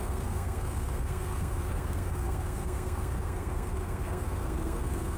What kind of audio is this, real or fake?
fake